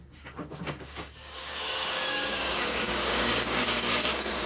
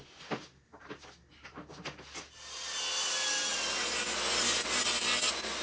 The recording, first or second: second